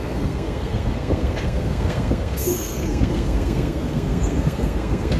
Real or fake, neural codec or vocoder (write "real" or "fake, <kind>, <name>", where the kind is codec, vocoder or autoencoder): fake, codec, SNAC